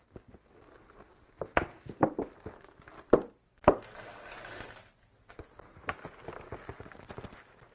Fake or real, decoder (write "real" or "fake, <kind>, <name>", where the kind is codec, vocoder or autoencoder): real